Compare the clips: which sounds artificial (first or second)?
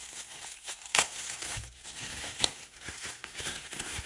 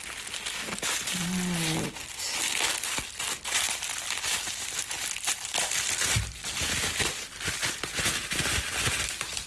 first